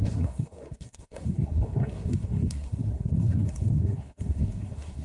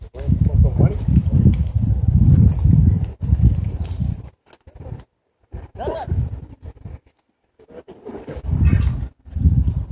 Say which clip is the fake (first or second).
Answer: first